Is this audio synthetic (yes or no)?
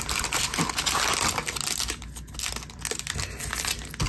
no